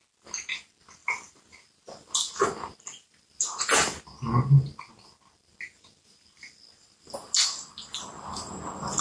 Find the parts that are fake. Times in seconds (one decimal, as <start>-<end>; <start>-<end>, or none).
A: none